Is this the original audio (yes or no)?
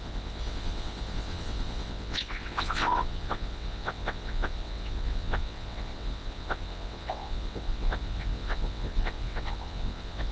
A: no